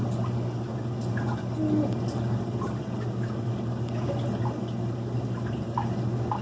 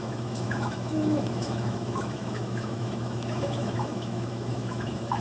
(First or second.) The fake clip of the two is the second